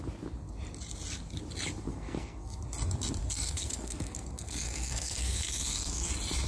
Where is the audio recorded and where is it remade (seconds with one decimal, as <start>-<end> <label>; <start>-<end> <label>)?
0.0-1.9 recorded; 1.9-2.6 remade; 2.6-3.2 recorded; 3.2-6.1 remade; 6.1-6.5 recorded

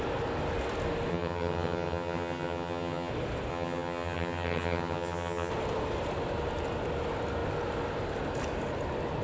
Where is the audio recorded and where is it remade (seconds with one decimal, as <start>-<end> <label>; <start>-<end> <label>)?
0.0-1.1 recorded; 1.1-3.1 remade; 3.1-3.5 recorded; 3.5-5.5 remade; 5.5-9.2 recorded